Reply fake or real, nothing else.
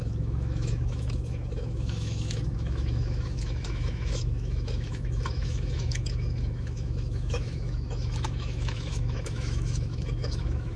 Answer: fake